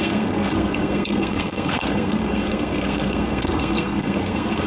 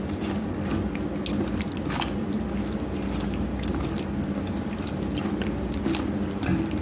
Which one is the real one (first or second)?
second